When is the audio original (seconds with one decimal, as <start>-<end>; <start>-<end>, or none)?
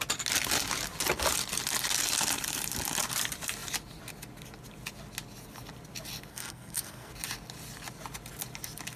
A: 0.0-6.3; 7.1-9.0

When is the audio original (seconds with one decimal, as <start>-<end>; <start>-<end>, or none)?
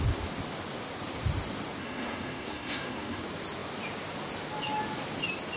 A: 0.0-1.8; 3.2-5.6